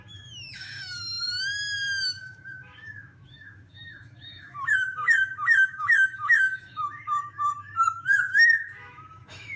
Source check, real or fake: fake